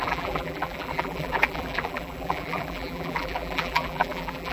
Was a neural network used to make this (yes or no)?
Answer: yes